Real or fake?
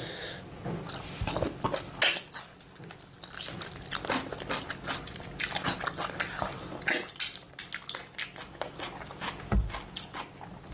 real